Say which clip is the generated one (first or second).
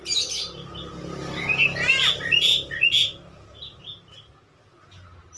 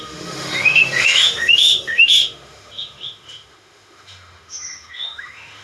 second